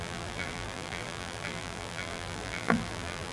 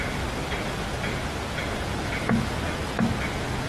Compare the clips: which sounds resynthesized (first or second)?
first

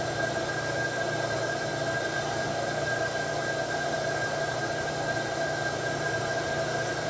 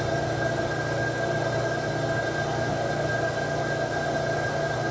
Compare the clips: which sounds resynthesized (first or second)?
first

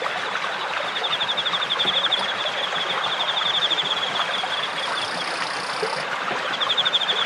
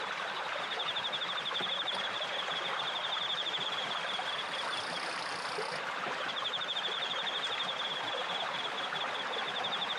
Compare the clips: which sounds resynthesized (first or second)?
second